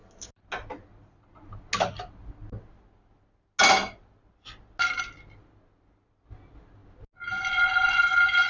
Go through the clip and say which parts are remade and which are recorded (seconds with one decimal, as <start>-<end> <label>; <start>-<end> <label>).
0.0-8.5 recorded